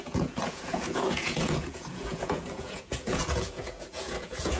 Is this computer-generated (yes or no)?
yes